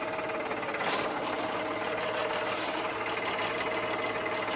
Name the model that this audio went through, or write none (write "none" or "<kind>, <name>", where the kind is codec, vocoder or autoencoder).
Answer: none